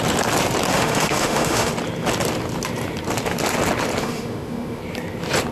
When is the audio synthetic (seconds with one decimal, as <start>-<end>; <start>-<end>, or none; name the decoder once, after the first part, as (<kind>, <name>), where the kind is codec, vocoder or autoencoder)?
0.7-1.7 (autoencoder, DAC-VAE); 4.0-4.8

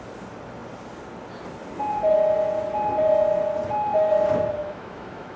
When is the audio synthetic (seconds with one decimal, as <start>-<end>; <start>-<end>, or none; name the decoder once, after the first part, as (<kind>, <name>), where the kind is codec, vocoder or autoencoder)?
4.6-5.4 (autoencoder, DAC-VAE)

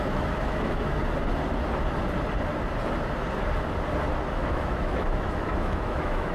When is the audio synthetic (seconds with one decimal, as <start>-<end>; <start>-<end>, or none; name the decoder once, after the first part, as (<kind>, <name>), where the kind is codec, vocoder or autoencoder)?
0.0-1.0 (autoencoder, DAC-VAE); 4.3-6.3